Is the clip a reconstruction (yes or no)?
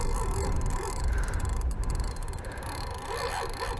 no